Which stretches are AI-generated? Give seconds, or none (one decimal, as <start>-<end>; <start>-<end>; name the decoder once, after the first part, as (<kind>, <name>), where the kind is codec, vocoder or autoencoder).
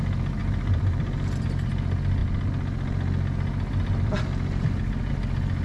0.4-1.7 (vocoder, BigVGAN v2)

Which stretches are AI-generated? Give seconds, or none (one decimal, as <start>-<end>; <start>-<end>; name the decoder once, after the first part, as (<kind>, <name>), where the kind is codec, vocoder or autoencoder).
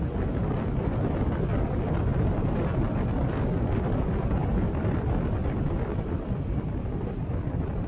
4.4-7.9 (vocoder, BigVGAN v2)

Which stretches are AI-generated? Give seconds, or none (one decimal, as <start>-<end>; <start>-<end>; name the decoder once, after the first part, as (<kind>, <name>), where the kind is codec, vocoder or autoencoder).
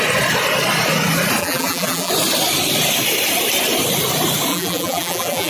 1.4-2.1 (vocoder, BigVGAN v2); 4.5-5.5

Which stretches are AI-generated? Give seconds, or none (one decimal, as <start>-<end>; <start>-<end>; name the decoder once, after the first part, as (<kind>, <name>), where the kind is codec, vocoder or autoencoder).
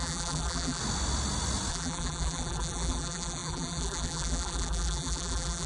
0.0-0.8 (vocoder, BigVGAN v2); 1.7-5.7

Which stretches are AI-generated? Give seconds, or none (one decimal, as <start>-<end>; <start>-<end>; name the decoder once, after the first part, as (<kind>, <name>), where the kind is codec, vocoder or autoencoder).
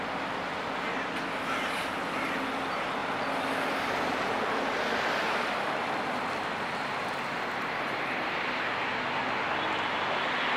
none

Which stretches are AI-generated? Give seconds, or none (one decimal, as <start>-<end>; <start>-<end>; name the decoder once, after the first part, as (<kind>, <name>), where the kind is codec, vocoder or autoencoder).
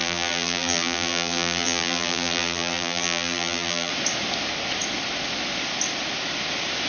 0.0-3.9 (vocoder, BigVGAN v2)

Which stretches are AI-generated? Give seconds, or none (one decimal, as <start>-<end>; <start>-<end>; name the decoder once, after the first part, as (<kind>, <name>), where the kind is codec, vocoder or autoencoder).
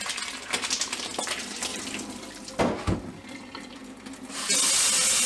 1.7-2.6 (vocoder, BigVGAN v2)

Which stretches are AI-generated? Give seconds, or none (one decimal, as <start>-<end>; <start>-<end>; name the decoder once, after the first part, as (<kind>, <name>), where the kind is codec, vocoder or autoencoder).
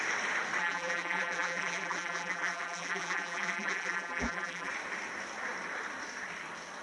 0.6-4.7 (vocoder, BigVGAN v2)